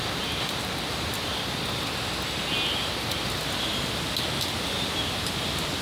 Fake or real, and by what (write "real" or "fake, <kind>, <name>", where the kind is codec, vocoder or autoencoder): real